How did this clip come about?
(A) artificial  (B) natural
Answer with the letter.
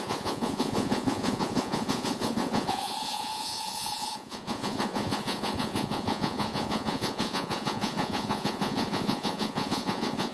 A